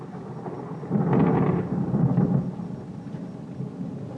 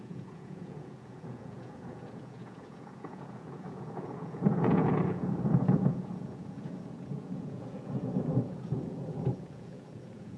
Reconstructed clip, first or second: second